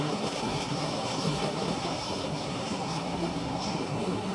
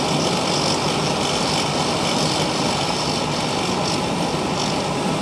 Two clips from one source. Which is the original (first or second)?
second